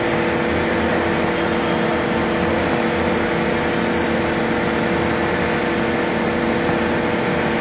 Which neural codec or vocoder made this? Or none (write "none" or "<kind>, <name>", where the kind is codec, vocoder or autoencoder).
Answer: none